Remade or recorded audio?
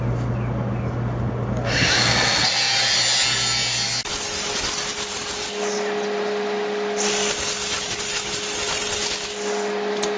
recorded